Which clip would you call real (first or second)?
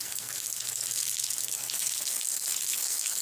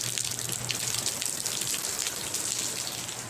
second